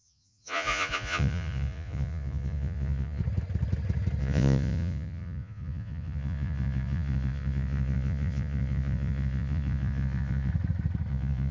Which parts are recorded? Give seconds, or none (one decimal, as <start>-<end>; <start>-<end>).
3.2-4.2; 10.5-11.1